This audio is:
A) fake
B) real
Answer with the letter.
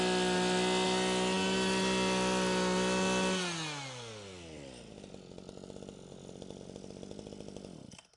B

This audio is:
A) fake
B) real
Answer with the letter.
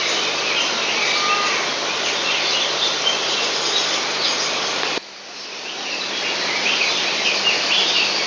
B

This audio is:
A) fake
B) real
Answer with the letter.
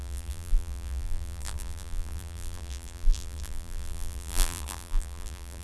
A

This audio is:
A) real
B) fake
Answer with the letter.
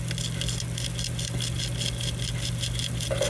A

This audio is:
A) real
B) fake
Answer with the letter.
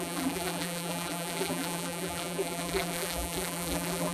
B